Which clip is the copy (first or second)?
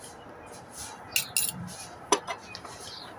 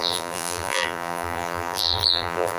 second